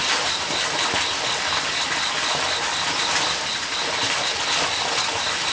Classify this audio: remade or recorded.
recorded